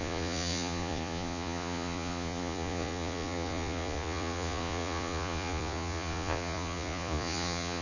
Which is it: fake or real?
fake